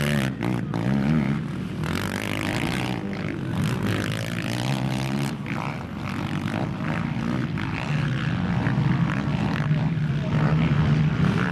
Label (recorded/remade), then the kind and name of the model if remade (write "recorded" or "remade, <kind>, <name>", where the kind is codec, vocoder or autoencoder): recorded